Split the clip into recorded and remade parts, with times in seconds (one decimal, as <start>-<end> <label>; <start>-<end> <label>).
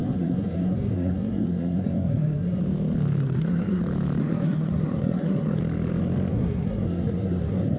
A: 0.0-2.6 remade; 2.6-3.2 recorded; 3.2-3.8 remade; 3.8-4.2 recorded; 4.2-5.6 remade; 5.6-6.3 recorded; 6.3-7.8 remade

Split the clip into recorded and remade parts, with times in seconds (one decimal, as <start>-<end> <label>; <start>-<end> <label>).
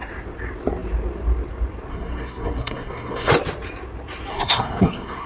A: 0.0-1.9 recorded; 1.9-3.3 remade; 3.3-4.3 recorded; 4.3-5.3 remade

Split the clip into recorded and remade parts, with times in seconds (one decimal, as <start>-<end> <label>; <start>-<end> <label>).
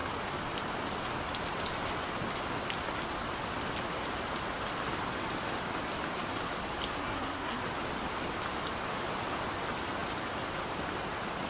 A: 0.0-7.0 recorded; 7.0-7.6 remade; 7.6-11.5 recorded